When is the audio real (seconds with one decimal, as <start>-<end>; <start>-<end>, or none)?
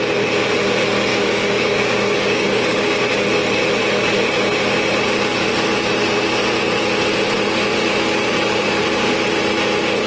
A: 0.0-1.1; 3.0-10.1